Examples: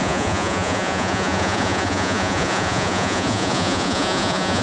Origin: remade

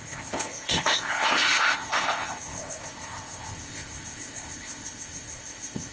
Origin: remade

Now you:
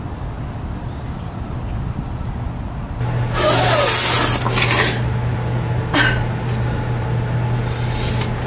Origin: recorded